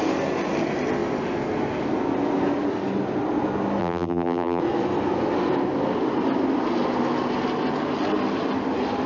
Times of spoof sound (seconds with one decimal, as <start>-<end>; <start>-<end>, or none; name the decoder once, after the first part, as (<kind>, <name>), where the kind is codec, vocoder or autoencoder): 3.8-4.6 (vocoder, BigVGAN v2)